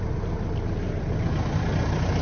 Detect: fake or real fake